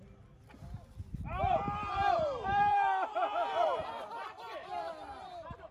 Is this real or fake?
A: fake